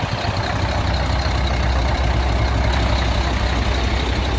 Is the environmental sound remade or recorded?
recorded